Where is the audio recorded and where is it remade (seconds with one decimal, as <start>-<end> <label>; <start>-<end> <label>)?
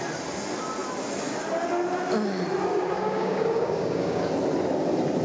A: 0.0-2.7 recorded; 2.7-4.3 remade; 4.3-5.2 recorded